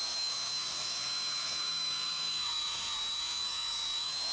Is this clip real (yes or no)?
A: no